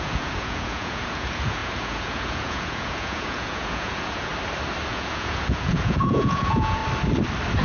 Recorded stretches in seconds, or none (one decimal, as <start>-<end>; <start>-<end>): 4.3-4.9; 6.8-7.6